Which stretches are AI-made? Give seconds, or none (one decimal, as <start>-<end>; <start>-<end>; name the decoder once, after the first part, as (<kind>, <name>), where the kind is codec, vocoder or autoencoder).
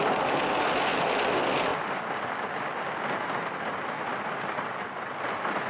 none